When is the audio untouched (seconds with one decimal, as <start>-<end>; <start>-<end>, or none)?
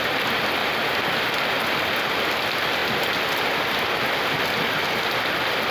0.0-5.7